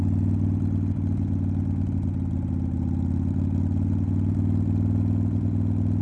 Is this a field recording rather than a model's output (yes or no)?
yes